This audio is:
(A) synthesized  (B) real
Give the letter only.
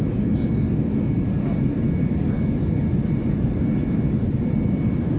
B